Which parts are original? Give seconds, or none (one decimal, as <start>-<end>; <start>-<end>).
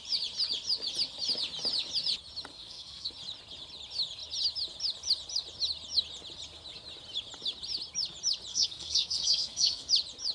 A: 0.0-2.5; 3.1-8.5; 9.9-10.3